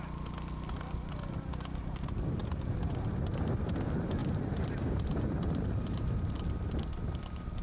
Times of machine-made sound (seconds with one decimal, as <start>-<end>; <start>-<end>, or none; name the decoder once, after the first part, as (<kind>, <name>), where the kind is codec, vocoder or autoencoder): 4.2-6.3 (vocoder, BigVGAN v2)

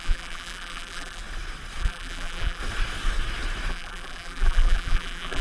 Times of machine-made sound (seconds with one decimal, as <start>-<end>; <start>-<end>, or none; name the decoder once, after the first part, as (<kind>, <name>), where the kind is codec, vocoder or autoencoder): 0.0-1.2 (vocoder, BigVGAN v2); 1.8-2.6; 3.7-5.4

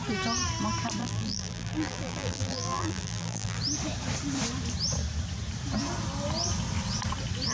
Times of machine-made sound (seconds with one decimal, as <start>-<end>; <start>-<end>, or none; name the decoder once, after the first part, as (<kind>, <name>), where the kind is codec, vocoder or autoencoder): 1.0-3.6 (vocoder, BigVGAN v2)

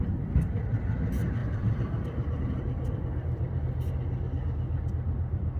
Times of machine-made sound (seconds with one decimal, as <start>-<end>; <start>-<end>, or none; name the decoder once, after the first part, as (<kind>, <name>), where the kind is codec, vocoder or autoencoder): 1.4-3.9 (vocoder, BigVGAN v2)

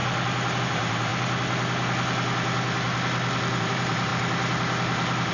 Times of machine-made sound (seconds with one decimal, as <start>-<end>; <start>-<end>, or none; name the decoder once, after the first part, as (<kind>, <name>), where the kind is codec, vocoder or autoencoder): 0.6-1.1 (vocoder, BigVGAN v2); 3.6-4.1

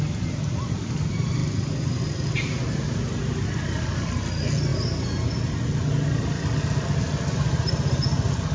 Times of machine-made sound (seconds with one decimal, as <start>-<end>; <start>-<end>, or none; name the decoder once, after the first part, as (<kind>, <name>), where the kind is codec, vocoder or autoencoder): none

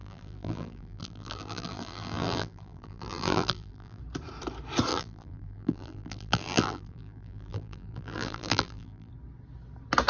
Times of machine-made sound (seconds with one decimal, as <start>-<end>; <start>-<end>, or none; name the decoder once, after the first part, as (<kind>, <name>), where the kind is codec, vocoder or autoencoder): 0.0-4.0 (vocoder, BigVGAN v2); 4.9-9.1